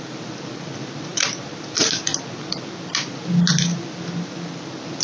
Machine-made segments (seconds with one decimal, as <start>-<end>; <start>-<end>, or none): none